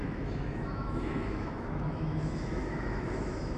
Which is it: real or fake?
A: fake